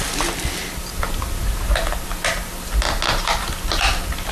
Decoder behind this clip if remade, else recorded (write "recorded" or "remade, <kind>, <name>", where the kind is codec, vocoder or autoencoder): recorded